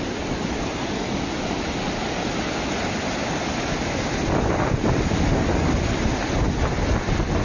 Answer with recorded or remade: recorded